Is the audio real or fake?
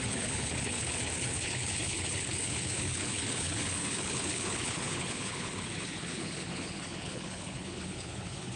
fake